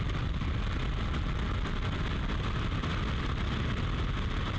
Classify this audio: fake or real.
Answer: real